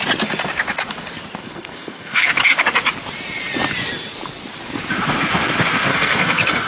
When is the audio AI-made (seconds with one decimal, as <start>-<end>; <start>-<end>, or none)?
1.4-2.4; 5.9-6.7